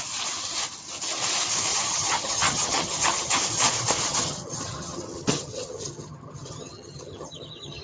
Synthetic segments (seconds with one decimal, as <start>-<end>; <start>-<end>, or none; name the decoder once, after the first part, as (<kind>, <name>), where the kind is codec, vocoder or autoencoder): 1.7-3.4 (vocoder, HiFi-GAN); 4.1-7.8